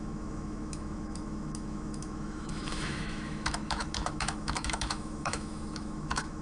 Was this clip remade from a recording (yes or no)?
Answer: yes